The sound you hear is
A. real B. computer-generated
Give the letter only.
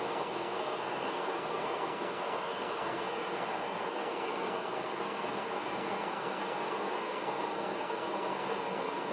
B